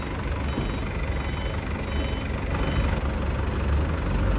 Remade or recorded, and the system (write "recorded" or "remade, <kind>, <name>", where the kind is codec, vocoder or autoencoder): recorded